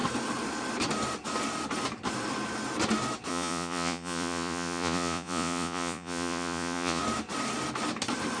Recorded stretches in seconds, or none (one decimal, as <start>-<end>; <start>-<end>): 0.0-3.3; 7.0-8.4